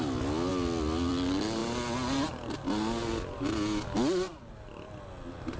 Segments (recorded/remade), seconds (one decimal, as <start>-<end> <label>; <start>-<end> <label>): 0.0-5.6 recorded